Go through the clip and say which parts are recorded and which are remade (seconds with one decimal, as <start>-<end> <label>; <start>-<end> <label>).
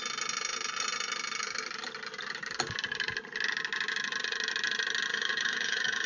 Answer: 0.0-5.1 recorded; 5.1-6.1 remade